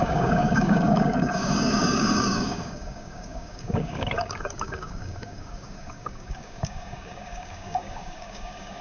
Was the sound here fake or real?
fake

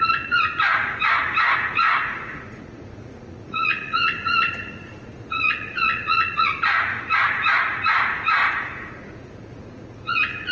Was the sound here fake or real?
fake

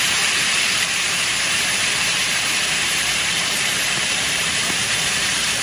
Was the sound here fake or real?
fake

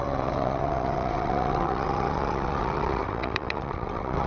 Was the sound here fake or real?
fake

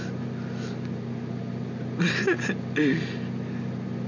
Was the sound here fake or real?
real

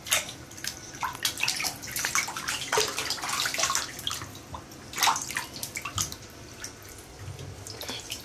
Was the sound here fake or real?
real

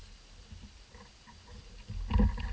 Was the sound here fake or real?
real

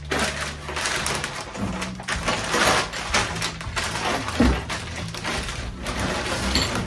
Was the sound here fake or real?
real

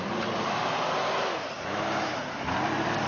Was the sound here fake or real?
fake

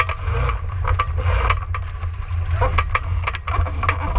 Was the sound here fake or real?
real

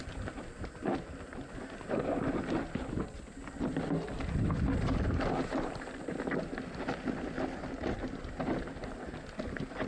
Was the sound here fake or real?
real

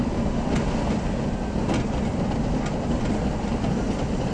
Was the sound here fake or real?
real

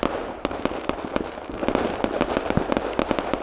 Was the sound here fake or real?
real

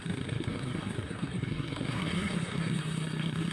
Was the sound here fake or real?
fake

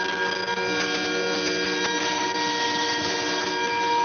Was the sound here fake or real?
real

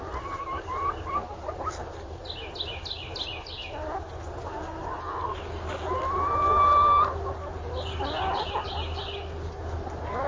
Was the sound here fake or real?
real